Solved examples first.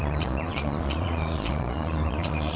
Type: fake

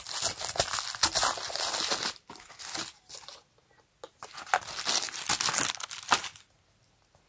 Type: real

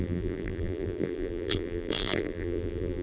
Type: fake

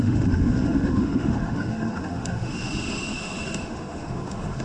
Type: fake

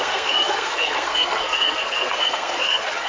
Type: fake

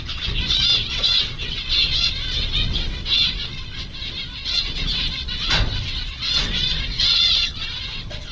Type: fake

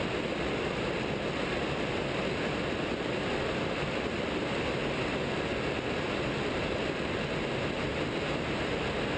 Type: real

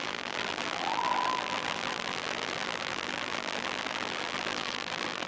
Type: fake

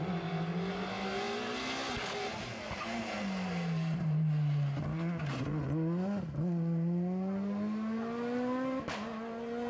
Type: real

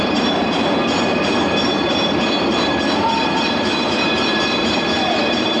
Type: fake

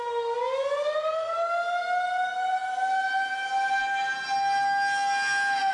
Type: real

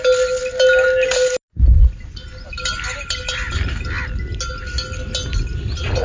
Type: real